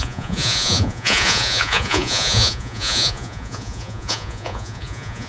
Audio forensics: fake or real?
fake